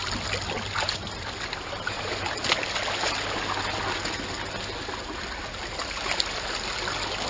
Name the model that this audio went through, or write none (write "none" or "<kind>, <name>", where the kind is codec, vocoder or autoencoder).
none